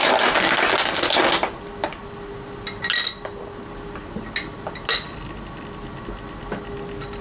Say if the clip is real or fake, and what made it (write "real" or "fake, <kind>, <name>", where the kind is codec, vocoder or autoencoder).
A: real